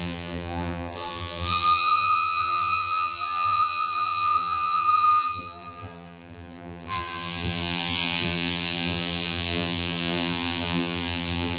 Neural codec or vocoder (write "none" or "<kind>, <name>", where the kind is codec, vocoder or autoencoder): vocoder, BigVGAN v2